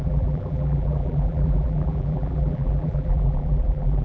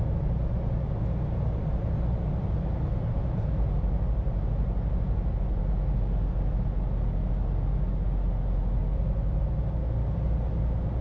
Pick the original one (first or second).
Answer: second